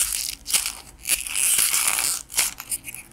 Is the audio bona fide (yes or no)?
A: yes